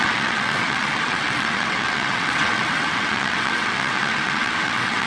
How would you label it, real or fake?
fake